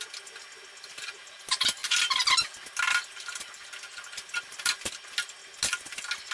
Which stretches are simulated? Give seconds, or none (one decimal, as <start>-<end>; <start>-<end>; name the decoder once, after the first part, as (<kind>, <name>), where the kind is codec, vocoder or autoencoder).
none